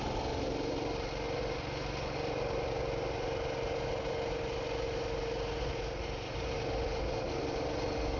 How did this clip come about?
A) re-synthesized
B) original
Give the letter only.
B